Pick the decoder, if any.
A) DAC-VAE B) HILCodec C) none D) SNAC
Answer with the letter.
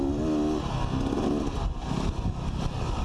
C